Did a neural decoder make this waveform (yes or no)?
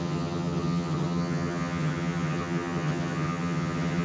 yes